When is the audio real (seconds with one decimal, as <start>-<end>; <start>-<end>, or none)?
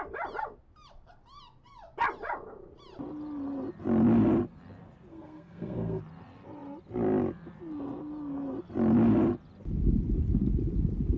0.0-5.1; 6.0-11.2